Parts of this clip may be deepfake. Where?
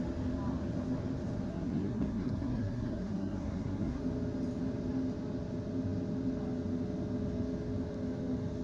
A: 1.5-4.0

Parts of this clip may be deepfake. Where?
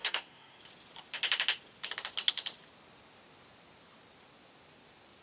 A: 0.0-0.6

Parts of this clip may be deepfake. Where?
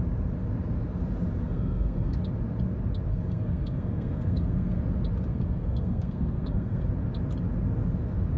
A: 1.4-2.2; 3.1-4.8; 5.3-6.9